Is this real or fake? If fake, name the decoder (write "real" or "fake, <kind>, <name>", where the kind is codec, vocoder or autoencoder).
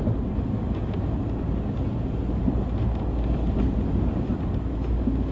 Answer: real